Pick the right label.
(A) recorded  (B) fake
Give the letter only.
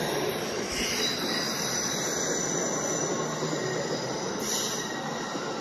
A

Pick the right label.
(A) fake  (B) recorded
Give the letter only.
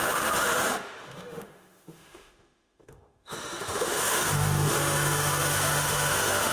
A